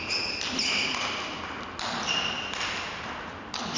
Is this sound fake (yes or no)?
no